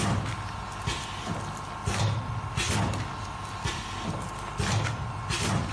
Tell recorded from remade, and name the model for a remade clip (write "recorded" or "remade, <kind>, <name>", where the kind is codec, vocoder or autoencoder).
recorded